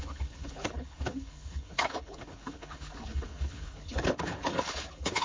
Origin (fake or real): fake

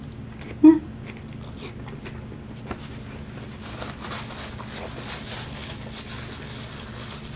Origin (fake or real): real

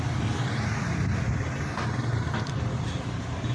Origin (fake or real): real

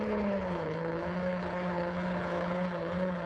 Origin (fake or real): fake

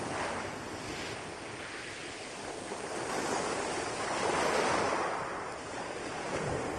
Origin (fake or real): real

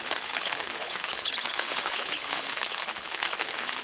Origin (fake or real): fake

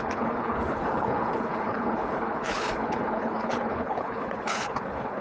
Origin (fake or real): fake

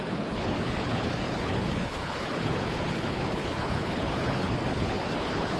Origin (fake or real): fake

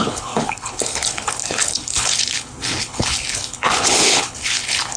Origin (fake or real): fake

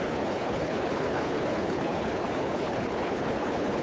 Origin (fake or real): fake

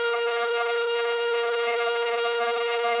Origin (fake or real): fake